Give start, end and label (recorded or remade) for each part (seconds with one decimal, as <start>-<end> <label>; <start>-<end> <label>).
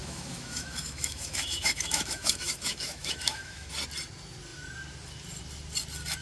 0.0-3.7 remade; 3.7-6.2 recorded